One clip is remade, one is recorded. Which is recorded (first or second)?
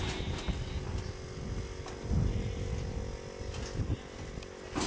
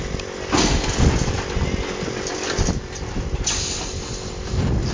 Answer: first